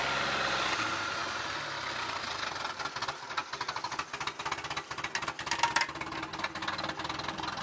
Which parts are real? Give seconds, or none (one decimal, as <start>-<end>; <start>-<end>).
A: 0.0-7.6